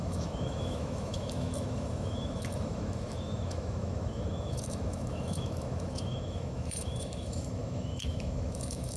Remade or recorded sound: remade